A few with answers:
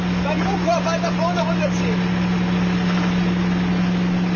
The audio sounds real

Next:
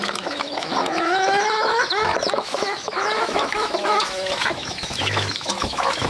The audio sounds fake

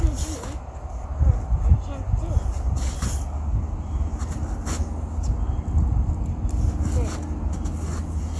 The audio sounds real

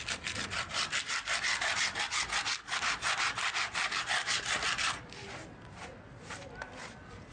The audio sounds real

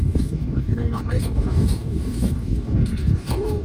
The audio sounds fake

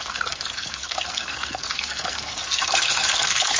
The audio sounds fake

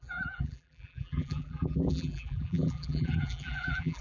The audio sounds fake